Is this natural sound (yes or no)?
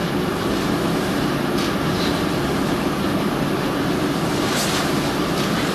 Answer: yes